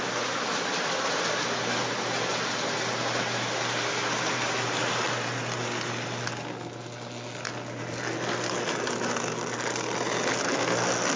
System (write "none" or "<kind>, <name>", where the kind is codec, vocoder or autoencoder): none